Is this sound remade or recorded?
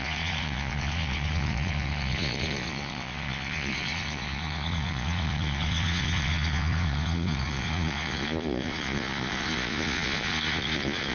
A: remade